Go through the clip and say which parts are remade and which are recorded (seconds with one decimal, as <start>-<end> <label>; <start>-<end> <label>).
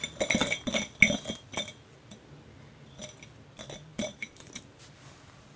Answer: 0.0-3.9 recorded; 3.9-4.6 remade; 4.6-5.6 recorded